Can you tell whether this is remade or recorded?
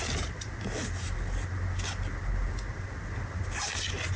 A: recorded